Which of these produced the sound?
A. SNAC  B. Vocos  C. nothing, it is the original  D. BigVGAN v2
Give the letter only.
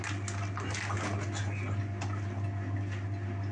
C